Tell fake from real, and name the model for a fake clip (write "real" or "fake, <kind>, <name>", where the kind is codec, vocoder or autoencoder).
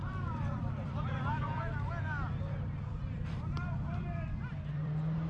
fake, vocoder, BigVGAN v2